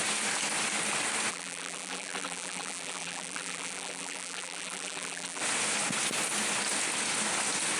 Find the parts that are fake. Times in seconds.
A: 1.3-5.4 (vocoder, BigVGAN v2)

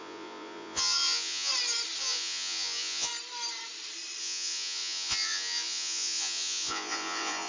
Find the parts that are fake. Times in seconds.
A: 0.0-1.5 (vocoder, Vocos); 2.0-3.1; 4.2-7.5

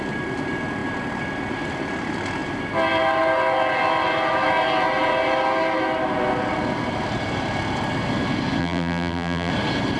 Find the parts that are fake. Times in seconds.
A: 8.6-9.5 (vocoder, BigVGAN v2)

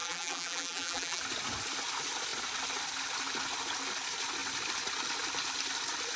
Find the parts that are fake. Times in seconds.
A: 0.0-1.2 (vocoder, BigVGAN v2)

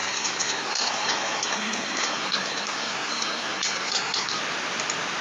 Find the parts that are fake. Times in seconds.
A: 0.0-4.4 (codec, SNAC)

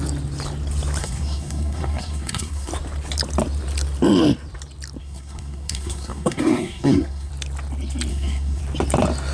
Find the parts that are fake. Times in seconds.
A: 1.0-2.7 (codec, SNAC); 5.0-7.3; 8.1-8.6

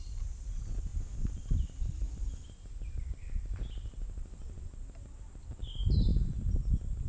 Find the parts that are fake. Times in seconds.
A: none